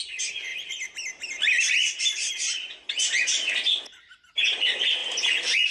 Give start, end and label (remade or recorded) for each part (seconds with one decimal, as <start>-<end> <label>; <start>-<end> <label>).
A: 0.0-5.7 recorded